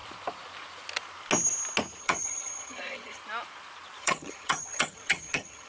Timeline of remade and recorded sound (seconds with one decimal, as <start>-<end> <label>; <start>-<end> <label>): 0.0-2.0 recorded; 2.0-3.2 remade; 3.2-4.0 recorded; 4.0-5.7 remade